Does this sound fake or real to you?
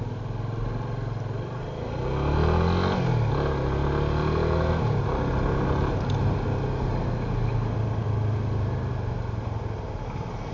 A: real